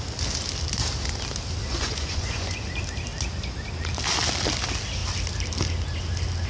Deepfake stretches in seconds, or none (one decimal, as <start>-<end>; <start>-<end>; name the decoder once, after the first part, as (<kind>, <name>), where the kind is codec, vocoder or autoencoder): 1.7-2.7 (vocoder, Vocos)

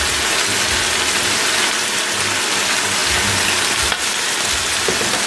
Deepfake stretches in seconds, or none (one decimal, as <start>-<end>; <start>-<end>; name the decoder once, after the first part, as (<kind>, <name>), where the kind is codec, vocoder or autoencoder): none

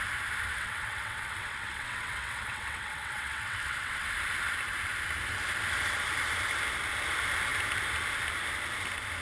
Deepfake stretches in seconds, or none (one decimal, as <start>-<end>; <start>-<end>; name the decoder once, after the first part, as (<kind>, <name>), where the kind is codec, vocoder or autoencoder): 0.5-4.1 (vocoder, WaveNeXt)

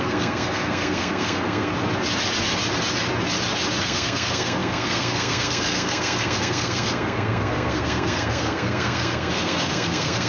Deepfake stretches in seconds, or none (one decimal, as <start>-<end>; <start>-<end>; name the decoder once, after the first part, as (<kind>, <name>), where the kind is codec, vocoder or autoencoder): 0.0-1.7 (codec, SNAC); 3.8-10.3

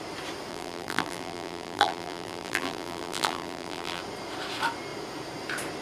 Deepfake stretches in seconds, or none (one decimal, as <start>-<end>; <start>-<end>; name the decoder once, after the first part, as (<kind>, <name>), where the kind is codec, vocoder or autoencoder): 0.5-4.0 (vocoder, BigVGAN v2)

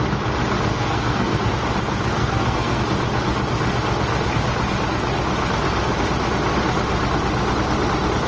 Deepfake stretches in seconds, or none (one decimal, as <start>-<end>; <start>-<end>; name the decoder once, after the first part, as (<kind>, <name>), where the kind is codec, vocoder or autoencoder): 0.7-1.5 (codec, SNAC); 2.2-2.8

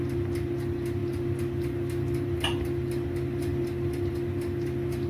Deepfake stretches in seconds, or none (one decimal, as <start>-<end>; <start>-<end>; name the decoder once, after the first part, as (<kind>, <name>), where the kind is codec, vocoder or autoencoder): none

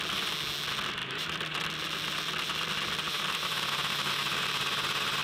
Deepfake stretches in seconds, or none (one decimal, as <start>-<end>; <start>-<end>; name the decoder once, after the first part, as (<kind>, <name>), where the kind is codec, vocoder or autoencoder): 1.0-4.1 (vocoder, BigVGAN v2)